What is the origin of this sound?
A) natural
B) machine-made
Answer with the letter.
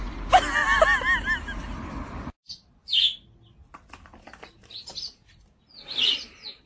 A